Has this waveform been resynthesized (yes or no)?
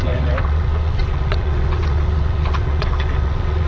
yes